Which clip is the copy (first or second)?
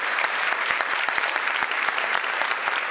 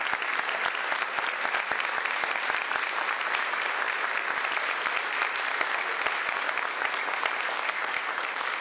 first